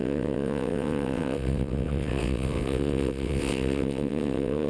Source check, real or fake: fake